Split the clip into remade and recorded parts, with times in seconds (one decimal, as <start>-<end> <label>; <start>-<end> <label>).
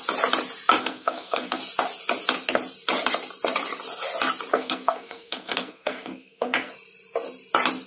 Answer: 0.0-0.8 recorded; 0.8-1.6 remade; 1.6-4.5 recorded; 4.5-6.7 remade; 6.7-7.9 recorded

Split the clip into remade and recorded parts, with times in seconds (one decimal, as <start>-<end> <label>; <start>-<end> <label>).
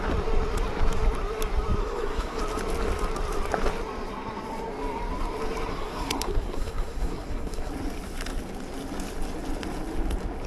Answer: 0.0-1.8 recorded; 1.8-2.4 remade; 2.4-5.7 recorded; 5.7-7.7 remade; 7.7-10.5 recorded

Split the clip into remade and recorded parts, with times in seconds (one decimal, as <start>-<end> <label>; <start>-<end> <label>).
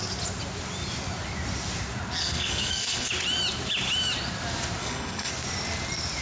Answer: 0.0-2.2 recorded; 2.2-3.1 remade; 3.1-4.8 recorded; 4.8-5.3 remade; 5.3-6.2 recorded